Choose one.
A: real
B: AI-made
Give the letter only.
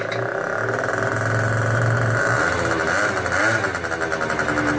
A